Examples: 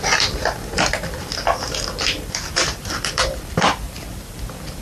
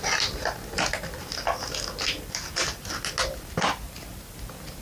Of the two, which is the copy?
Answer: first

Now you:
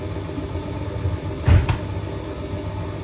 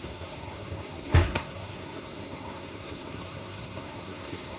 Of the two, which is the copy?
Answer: second